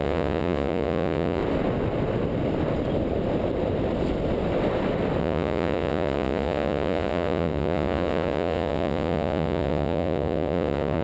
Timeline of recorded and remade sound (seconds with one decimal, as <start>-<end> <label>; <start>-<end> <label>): 0.0-1.4 remade; 1.4-5.2 recorded; 5.2-11.0 remade